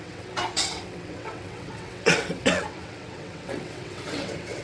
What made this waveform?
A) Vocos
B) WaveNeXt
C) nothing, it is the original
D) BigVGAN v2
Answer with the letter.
B